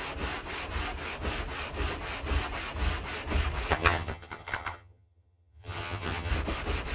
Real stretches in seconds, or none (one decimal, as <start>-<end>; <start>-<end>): 0.0-3.7; 6.3-6.9